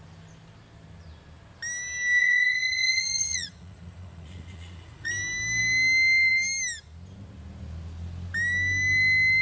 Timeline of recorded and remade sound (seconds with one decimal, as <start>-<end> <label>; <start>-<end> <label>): 0.0-2.2 recorded; 2.2-5.1 remade; 5.1-9.4 recorded